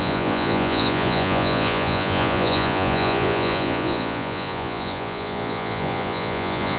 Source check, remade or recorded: remade